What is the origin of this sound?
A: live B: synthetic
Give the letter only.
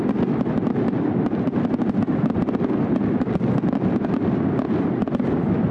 A